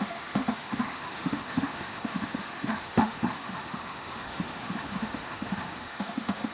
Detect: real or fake fake